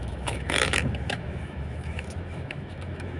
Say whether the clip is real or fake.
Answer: fake